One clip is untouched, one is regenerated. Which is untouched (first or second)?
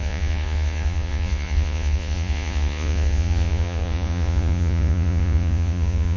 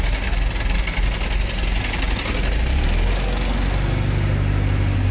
second